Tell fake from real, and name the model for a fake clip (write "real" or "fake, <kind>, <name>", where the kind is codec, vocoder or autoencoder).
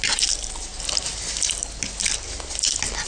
real